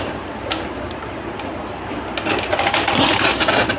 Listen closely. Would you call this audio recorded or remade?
recorded